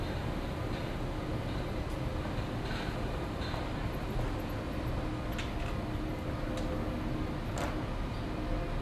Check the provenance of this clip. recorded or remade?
recorded